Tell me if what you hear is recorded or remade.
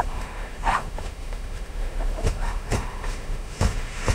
remade